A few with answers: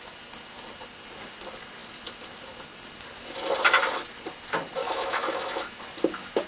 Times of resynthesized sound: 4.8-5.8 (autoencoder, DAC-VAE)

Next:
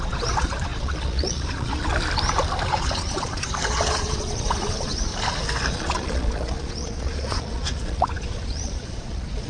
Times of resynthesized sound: 0.0-1.9 (vocoder, Vocos); 2.7-5.1; 5.7-9.5

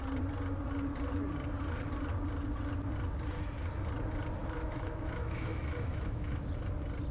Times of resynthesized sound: 4.4-6.4 (autoencoder, DAC-VAE)

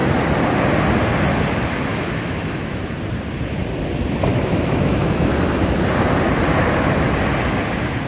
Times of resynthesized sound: 1.9-2.8 (autoencoder, DAC-VAE); 4.3-5.4